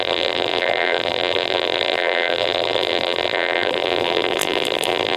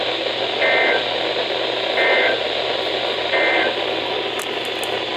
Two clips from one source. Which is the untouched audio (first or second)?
second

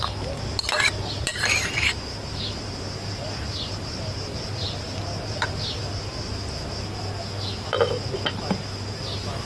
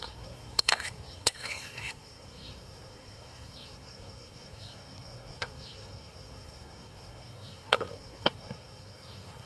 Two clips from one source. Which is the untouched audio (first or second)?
first